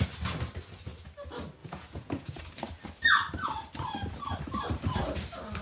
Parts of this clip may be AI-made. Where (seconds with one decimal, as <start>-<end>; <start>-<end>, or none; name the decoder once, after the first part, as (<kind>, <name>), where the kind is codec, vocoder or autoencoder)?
1.6-2.4 (vocoder, Vocos)